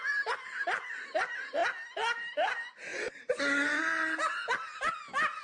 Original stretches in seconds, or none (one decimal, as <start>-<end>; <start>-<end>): 0.0-5.4

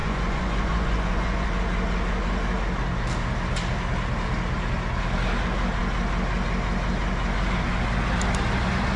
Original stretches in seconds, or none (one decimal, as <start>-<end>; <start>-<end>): 1.5-9.0

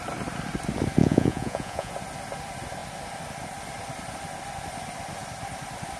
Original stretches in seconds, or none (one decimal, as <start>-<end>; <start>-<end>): 0.0-1.0; 1.9-6.0